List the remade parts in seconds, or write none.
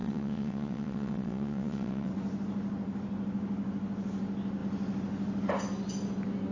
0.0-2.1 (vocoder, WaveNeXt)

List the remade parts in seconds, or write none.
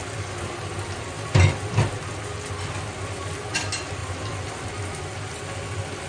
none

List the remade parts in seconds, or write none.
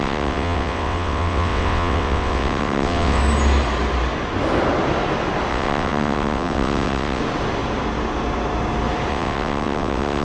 0.0-3.2 (vocoder, WaveNeXt); 5.5-7.2; 9.1-10.2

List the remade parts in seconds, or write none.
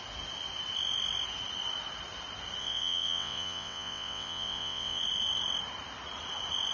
2.6-5.0 (vocoder, WaveNeXt)